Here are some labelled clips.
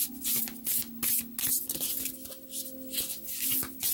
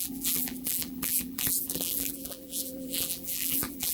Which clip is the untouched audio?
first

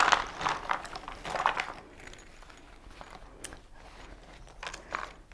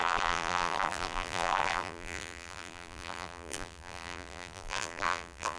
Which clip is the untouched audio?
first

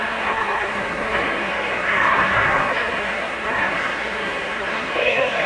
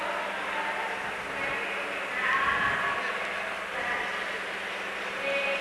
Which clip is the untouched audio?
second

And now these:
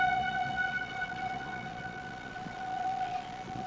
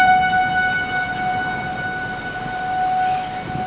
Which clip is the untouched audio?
second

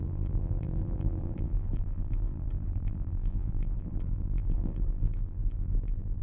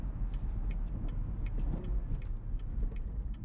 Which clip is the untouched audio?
second